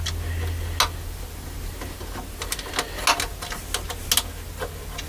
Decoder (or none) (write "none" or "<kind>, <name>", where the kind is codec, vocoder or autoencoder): none